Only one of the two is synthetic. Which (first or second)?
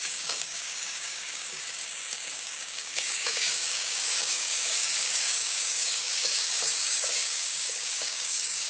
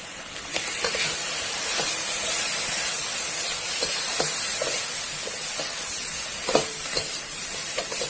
first